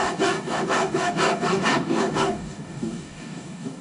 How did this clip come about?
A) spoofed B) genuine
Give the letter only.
A